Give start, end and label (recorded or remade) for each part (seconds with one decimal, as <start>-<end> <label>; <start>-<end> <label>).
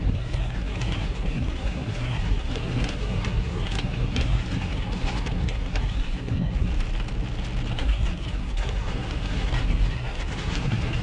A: 0.0-6.7 remade; 6.7-7.7 recorded; 7.7-11.0 remade